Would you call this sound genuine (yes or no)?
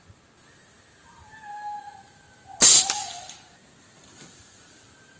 yes